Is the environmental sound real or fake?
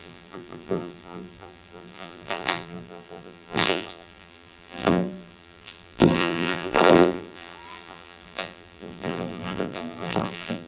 fake